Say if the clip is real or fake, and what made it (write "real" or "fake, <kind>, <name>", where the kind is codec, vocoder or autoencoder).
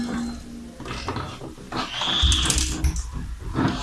real